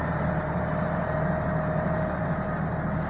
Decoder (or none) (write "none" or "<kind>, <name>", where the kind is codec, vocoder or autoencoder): none